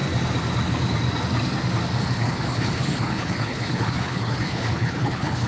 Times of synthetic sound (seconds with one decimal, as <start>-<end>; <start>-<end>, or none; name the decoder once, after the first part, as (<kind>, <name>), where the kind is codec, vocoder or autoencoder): 2.0-5.5 (codec, HILCodec)